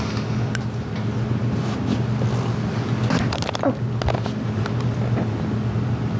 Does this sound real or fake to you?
real